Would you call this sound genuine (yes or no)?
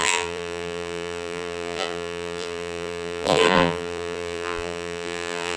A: no